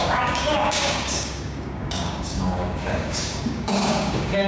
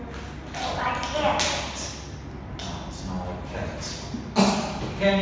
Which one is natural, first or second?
second